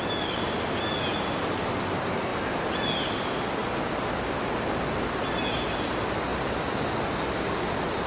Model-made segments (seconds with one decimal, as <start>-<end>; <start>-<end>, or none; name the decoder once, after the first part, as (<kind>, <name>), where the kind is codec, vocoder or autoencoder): none